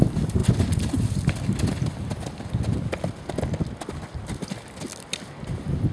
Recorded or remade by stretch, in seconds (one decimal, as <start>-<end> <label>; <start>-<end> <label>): 0.0-5.9 recorded